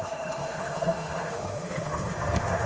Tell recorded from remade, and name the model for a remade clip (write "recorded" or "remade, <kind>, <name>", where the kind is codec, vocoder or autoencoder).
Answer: remade, autoencoder, DAC-VAE